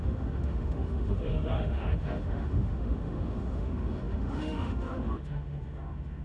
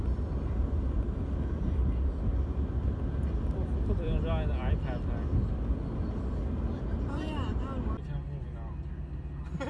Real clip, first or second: second